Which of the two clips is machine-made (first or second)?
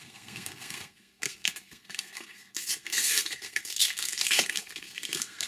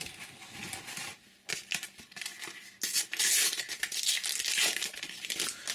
first